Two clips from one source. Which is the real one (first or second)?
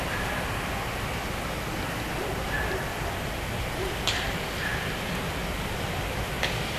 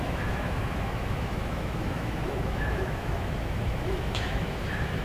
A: first